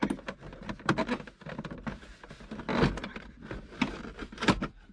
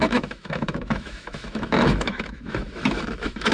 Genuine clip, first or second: first